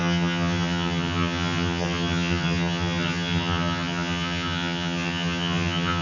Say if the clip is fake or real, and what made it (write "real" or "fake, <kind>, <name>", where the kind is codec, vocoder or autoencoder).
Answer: fake, vocoder, HiFi-GAN